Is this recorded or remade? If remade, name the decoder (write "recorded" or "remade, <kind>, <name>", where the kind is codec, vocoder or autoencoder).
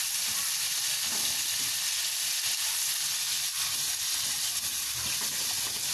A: recorded